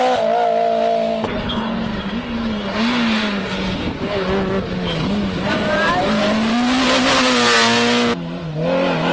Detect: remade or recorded recorded